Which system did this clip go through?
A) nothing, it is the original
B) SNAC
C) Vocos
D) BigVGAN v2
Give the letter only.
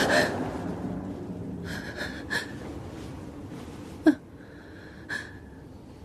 A